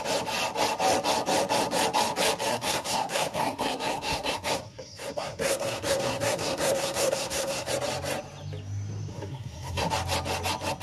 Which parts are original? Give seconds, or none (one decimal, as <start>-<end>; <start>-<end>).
0.0-2.5; 7.7-9.1; 9.9-10.8